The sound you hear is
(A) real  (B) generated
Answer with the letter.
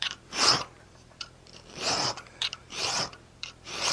B